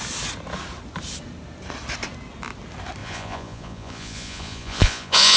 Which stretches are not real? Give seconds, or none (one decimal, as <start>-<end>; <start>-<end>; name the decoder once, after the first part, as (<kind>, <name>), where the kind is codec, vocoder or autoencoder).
3.0-5.4 (vocoder, Vocos)